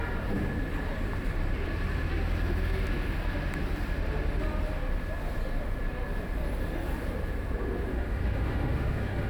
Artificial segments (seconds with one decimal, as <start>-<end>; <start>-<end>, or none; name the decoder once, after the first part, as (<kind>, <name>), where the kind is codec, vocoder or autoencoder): 7.9-9.3 (autoencoder, DAC-VAE)